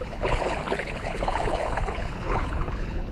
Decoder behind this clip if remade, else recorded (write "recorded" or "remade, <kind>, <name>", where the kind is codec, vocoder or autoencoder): remade, codec, HILCodec